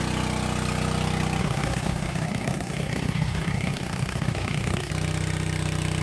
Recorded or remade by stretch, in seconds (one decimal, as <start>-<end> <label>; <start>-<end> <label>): 0.0-1.4 recorded; 1.4-4.9 remade; 4.9-6.0 recorded